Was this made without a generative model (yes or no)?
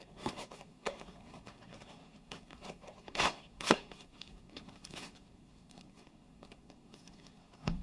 no